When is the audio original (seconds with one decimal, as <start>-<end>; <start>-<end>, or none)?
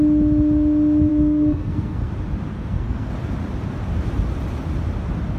0.0-1.1; 2.1-2.5; 3.1-5.4